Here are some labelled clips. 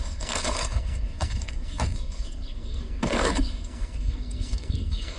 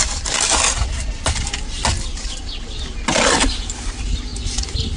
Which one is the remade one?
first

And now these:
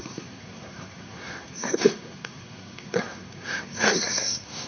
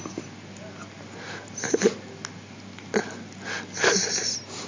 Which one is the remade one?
first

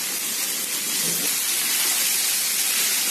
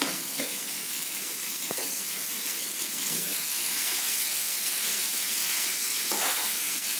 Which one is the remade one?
second